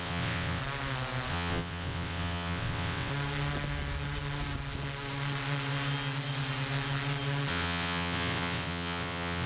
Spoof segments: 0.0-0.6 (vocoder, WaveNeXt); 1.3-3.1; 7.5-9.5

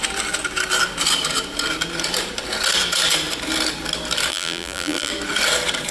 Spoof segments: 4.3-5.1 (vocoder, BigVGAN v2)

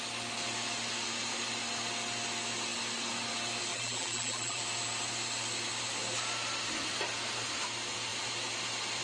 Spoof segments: 3.7-4.6 (vocoder, BigVGAN v2)

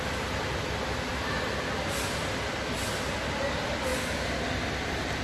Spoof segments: none

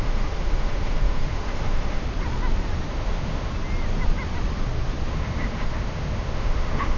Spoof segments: 0.0-2.0 (autoencoder, DAC-VAE); 2.9-3.5; 5.1-7.0

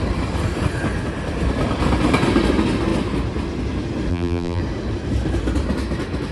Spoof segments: 4.1-4.6 (vocoder, BigVGAN v2)

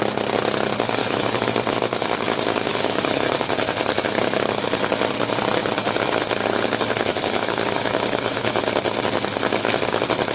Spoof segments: 1.0-1.5 (autoencoder, DAC-VAE); 2.7-3.3; 7.1-8.6